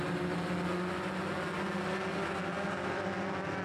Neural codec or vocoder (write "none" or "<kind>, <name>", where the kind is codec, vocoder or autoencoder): none